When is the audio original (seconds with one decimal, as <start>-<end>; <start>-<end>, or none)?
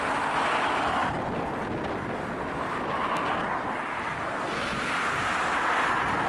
0.0-6.3